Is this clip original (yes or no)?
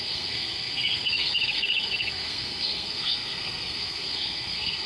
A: no